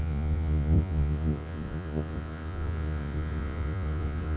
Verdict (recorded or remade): remade